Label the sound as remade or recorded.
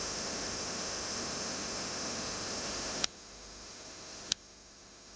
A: remade